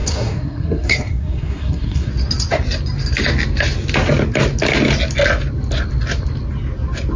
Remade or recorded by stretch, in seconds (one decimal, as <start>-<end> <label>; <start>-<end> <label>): 0.0-2.1 remade; 2.1-7.2 recorded